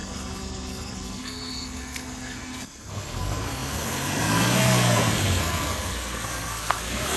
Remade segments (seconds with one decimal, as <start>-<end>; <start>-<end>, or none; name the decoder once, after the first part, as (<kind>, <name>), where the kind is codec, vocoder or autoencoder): 0.0-7.2 (codec, SNAC)